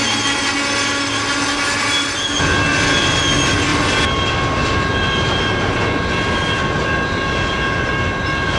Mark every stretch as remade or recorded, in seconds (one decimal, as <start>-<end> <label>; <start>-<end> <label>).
0.0-8.6 recorded